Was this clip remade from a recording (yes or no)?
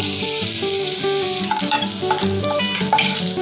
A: yes